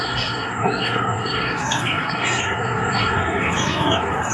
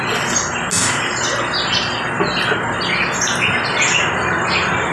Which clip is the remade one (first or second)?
first